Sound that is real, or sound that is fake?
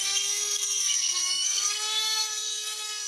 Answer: fake